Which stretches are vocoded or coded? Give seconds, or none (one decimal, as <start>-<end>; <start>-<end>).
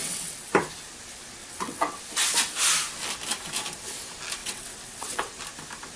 0.0-0.5; 1.4-2.0; 4.4-5.4